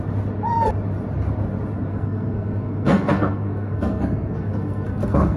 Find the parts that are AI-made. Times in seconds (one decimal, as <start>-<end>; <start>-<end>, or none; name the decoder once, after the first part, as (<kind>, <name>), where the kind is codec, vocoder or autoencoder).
1.9-5.4 (codec, SNAC)